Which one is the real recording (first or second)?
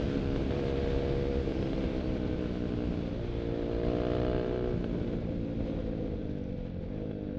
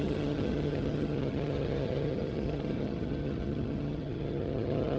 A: first